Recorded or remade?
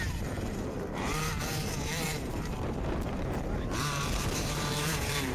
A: remade